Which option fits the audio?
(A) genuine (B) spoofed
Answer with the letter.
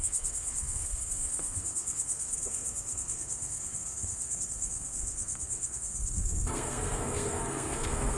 B